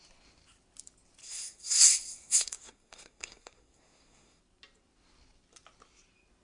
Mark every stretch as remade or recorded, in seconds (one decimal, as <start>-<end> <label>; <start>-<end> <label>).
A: 0.0-1.2 recorded; 1.2-4.4 remade; 4.4-6.4 recorded